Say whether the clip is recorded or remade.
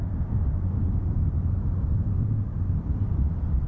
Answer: recorded